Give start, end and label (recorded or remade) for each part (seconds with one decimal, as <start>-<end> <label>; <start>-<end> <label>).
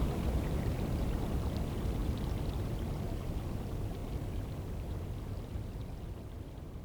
0.0-2.0 remade; 2.0-3.2 recorded; 3.2-6.8 remade